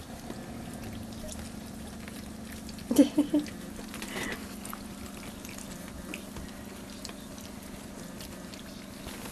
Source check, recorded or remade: recorded